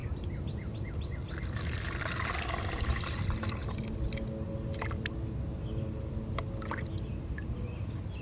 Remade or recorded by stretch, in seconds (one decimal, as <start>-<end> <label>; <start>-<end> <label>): 0.0-8.2 recorded